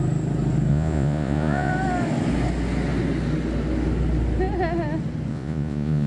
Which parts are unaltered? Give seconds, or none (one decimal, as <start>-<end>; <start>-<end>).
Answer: 0.0-0.7; 1.7-5.3